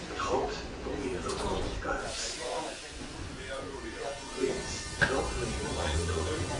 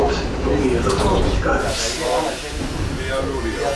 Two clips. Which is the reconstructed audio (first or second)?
first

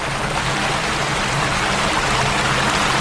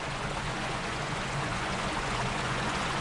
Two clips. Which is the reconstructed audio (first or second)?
second